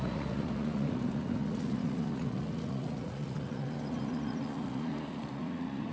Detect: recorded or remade remade